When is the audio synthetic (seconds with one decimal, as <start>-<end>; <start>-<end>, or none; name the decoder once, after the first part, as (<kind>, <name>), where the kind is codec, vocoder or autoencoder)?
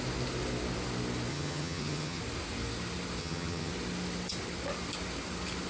1.3-2.2 (vocoder, HiFi-GAN); 3.2-3.7